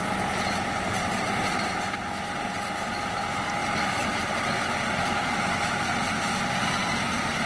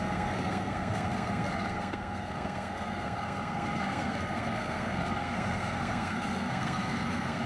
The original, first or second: first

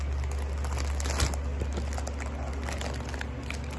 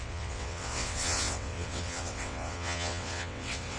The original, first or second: first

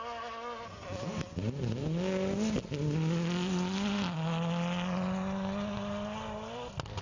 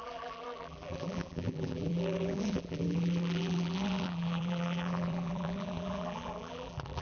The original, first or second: first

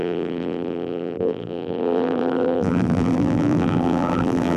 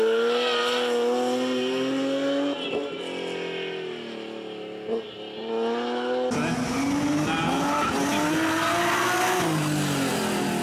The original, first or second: second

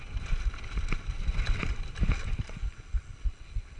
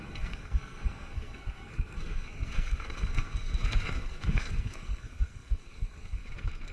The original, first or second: first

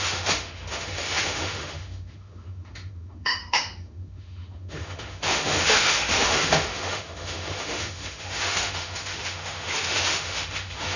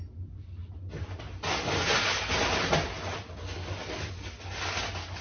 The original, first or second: second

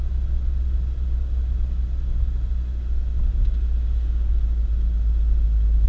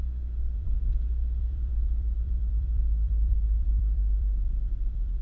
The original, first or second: first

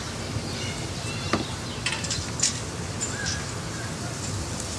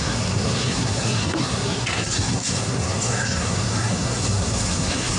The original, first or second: first